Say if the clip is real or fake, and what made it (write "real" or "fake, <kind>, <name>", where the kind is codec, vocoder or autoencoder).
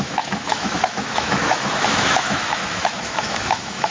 fake, autoencoder, DAC-VAE